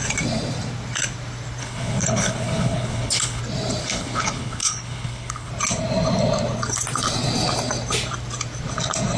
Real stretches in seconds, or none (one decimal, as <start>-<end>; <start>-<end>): 0.0-1.6; 3.4-3.8; 5.5-9.2

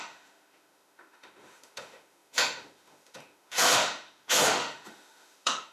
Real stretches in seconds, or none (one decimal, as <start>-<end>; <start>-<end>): none

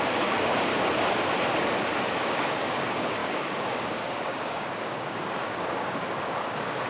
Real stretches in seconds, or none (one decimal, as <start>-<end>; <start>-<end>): 0.7-2.1

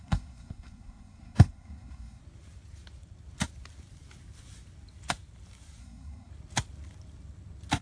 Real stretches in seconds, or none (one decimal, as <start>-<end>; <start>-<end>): 2.2-5.8; 6.3-7.8

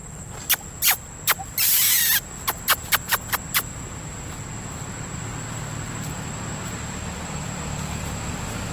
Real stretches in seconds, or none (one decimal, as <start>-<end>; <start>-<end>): 0.0-8.7